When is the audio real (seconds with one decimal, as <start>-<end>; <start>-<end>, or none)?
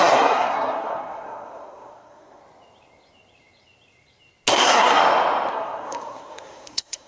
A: 2.4-4.5; 5.0-5.5